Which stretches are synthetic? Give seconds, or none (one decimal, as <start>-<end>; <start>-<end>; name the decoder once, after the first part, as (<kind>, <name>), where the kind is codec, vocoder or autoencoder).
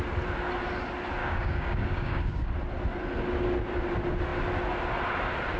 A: 1.2-2.5 (codec, DAC)